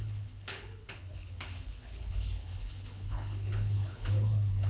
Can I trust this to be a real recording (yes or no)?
no